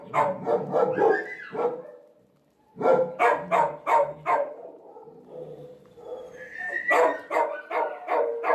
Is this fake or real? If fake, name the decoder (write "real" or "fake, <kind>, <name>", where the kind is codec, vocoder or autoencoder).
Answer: real